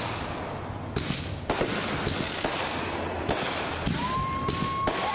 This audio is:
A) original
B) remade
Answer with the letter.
A